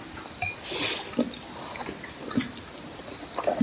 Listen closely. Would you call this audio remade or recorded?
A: recorded